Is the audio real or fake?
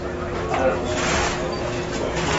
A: real